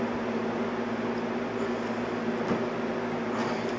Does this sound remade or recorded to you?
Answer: recorded